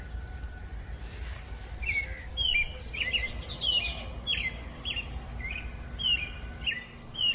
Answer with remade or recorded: recorded